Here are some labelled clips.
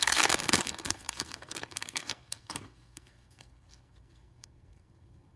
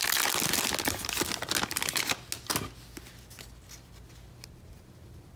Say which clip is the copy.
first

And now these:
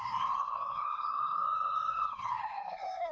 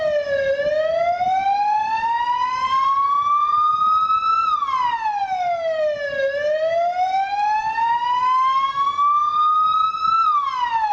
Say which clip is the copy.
first